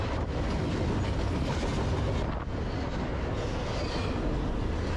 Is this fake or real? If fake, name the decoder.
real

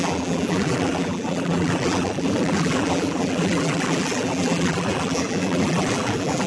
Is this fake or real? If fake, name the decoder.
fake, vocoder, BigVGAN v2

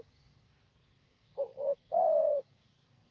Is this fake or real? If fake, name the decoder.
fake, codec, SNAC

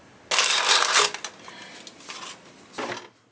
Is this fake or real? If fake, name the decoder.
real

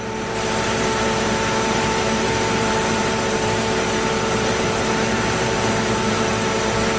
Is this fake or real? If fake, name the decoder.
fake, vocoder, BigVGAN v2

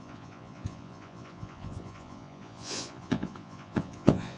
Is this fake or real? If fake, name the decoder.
fake, vocoder, Vocos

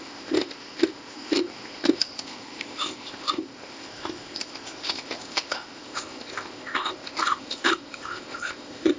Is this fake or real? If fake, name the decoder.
fake, codec, ZipCodec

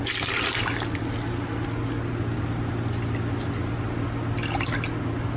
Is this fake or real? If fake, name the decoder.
real